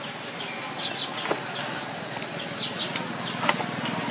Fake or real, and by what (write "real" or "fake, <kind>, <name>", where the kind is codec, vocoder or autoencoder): real